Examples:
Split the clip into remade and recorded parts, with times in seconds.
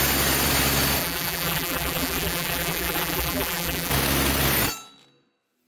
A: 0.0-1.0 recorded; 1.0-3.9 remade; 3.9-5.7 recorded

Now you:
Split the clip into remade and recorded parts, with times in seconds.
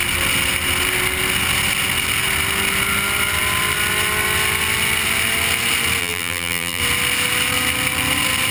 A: 0.0-6.0 recorded; 6.0-6.8 remade; 6.8-8.5 recorded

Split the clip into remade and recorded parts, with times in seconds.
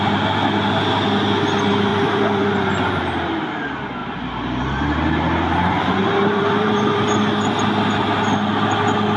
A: 0.0-1.9 recorded; 1.9-3.0 remade; 3.0-4.0 recorded; 4.0-7.0 remade; 7.0-9.2 recorded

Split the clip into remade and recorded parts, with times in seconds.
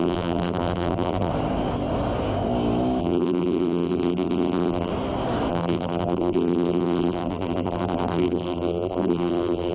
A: 0.0-1.3 remade; 1.3-3.0 recorded; 3.0-4.9 remade; 4.9-5.5 recorded; 5.5-9.7 remade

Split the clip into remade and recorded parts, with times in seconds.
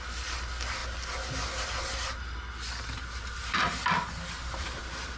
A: 0.0-5.2 recorded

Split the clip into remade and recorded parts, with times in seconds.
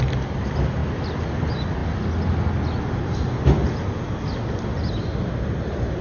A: 0.0-0.8 remade; 0.8-1.4 recorded; 1.4-1.8 remade; 1.8-5.4 recorded; 5.4-6.0 remade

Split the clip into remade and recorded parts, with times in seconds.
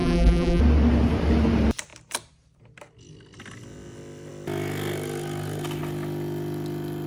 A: 0.0-0.6 remade; 0.6-7.1 recorded